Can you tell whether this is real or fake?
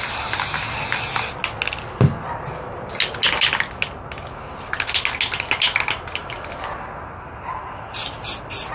real